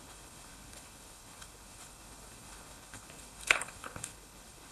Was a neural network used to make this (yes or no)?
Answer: yes